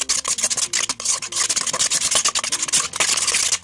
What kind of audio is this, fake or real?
real